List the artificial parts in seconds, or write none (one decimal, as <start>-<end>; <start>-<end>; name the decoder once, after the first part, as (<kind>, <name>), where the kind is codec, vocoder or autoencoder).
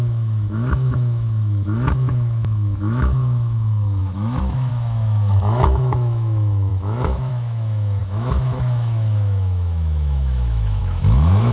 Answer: 0.0-11.5 (autoencoder, DAC-VAE)